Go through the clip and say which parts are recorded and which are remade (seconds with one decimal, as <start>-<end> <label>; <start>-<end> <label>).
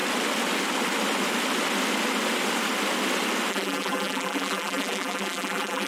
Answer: 0.0-3.5 recorded; 3.5-5.9 remade